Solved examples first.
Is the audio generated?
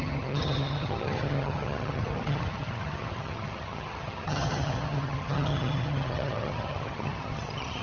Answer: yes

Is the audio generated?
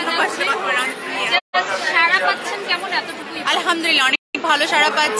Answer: no